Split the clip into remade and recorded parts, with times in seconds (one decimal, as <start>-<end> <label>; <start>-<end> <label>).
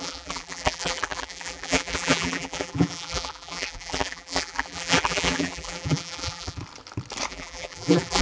0.0-6.6 remade; 6.6-7.3 recorded; 7.3-8.2 remade